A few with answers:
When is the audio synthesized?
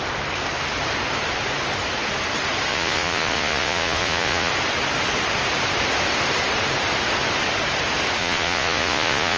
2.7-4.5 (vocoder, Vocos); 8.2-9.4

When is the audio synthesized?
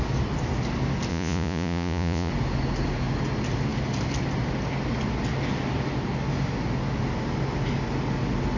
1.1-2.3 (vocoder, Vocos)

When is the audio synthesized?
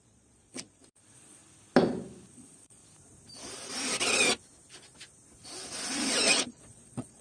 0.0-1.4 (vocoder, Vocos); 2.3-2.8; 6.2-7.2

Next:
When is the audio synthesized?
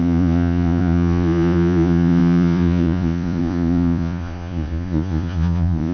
0.0-5.9 (vocoder, Vocos)